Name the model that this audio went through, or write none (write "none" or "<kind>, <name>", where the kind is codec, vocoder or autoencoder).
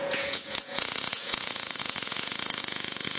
vocoder, Vocos